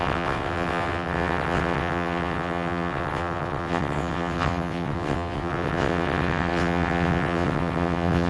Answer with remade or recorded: remade